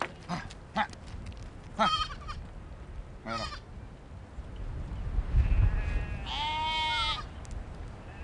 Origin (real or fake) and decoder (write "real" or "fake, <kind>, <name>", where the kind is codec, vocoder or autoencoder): real